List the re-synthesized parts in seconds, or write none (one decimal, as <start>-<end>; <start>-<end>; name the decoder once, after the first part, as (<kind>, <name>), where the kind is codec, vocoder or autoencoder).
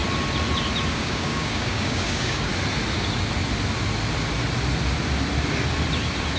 0.9-2.5 (codec, DAC)